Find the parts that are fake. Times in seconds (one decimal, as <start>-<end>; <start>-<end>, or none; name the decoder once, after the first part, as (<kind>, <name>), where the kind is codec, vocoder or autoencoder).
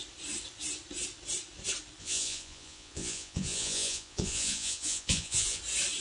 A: 2.0-5.6 (vocoder, Vocos)